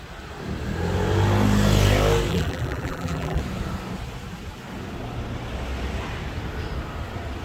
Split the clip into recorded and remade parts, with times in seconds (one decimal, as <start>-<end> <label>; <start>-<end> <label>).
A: 0.0-2.3 recorded; 2.3-3.4 remade; 3.4-7.4 recorded